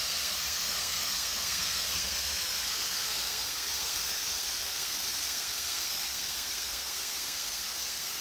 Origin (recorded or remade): remade